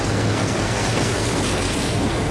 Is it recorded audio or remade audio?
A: remade